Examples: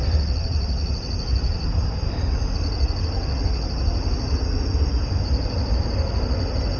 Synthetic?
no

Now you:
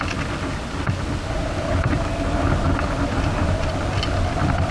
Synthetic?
no